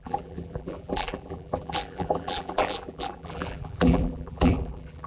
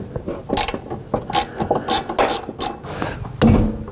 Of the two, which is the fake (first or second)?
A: first